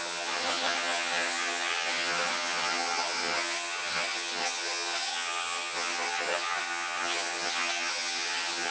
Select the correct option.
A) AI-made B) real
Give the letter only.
A